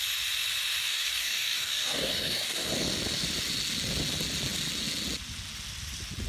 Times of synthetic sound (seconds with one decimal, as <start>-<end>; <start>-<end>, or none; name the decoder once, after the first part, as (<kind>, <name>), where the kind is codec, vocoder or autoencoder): 0.9-2.7 (codec, DAC)